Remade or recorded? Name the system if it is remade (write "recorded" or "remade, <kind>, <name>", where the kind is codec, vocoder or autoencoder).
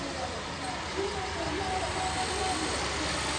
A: recorded